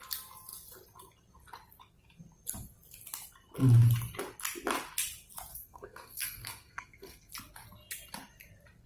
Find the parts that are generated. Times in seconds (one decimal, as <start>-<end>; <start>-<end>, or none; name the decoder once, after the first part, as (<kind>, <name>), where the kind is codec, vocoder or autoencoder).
5.5-7.3 (codec, SNAC)